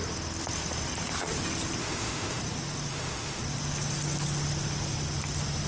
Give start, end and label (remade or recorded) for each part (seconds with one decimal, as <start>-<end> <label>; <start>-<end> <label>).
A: 0.0-1.8 recorded; 1.8-2.4 remade; 2.4-2.9 recorded; 2.9-3.4 remade; 3.4-5.7 recorded